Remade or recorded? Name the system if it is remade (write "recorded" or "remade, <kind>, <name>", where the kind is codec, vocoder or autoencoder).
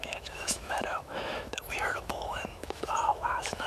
remade, autoencoder, DAC-VAE